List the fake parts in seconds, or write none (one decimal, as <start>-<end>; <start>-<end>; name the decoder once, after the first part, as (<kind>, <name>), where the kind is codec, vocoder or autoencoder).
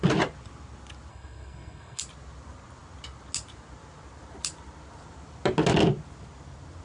1.1-2.0 (codec, SNAC)